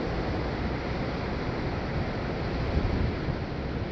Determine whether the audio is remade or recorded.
recorded